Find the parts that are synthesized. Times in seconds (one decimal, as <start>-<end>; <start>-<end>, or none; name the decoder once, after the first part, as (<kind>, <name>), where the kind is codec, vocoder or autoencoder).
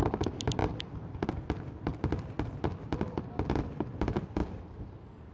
0.0-1.9 (vocoder, BigVGAN v2); 3.1-3.6